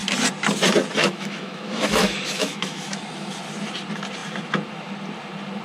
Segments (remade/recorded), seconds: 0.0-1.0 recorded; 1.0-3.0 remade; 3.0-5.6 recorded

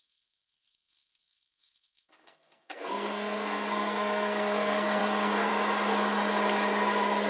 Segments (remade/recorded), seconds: 0.0-5.5 remade; 5.5-7.3 recorded

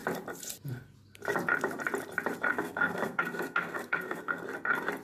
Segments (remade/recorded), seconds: 0.0-2.5 recorded; 2.5-4.4 remade; 4.4-5.0 recorded

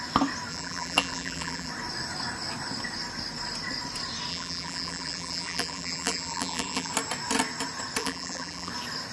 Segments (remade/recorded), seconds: 0.0-0.5 recorded; 0.5-1.7 remade; 1.7-4.3 recorded; 4.3-6.9 remade; 6.9-8.0 recorded; 8.0-8.7 remade; 8.7-9.1 recorded

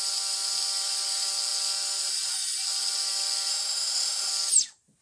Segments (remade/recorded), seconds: 0.0-3.5 recorded; 3.5-4.3 remade; 4.3-5.0 recorded

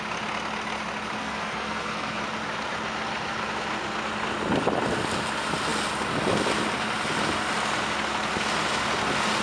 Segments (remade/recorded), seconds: 0.0-1.2 recorded; 1.2-2.2 remade; 2.2-9.4 recorded

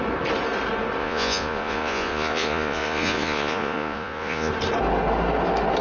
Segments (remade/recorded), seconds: 0.0-1.0 recorded; 1.0-4.5 remade; 4.5-5.8 recorded